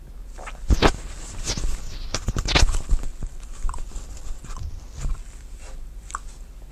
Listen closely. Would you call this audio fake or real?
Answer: fake